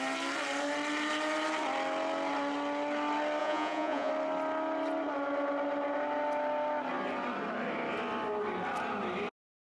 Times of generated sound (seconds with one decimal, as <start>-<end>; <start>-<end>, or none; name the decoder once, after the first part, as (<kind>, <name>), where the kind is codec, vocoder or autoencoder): 3.4-4.1 (vocoder, Vocos)